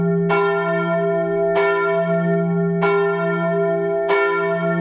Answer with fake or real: real